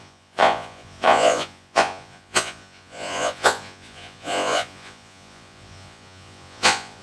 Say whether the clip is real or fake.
fake